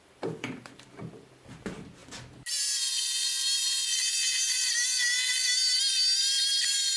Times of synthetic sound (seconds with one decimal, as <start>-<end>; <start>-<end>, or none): 0.0-2.0; 6.2-7.0

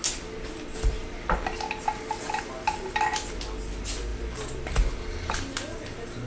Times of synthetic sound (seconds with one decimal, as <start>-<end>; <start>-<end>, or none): none

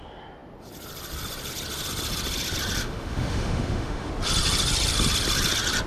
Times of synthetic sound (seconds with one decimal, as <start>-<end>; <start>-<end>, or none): 2.8-4.1

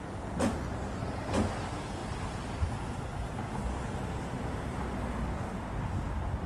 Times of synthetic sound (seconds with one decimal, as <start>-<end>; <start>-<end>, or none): none

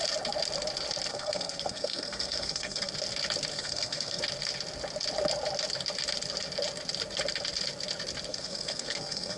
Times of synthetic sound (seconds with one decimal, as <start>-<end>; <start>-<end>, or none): 1.1-2.9; 3.5-4.2; 8.3-9.4